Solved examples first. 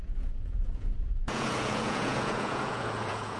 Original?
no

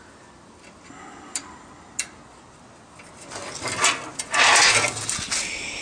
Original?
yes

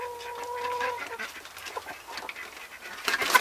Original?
yes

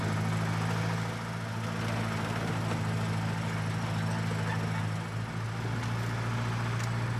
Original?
yes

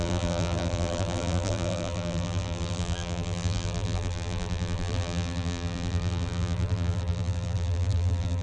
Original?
no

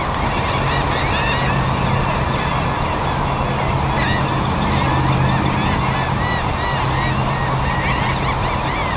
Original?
yes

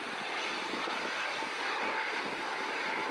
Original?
yes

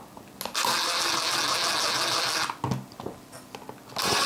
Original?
yes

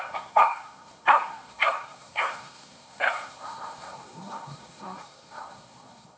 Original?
no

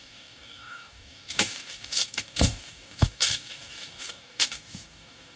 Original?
no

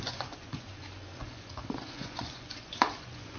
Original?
no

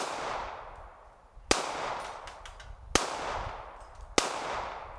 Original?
yes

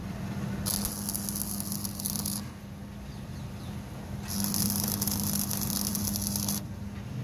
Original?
yes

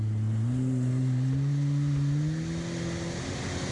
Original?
yes